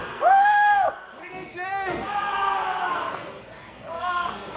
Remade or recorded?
remade